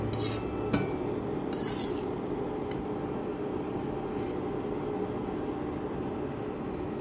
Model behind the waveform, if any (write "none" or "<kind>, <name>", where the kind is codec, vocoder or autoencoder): none